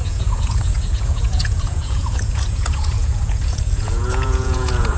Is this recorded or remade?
remade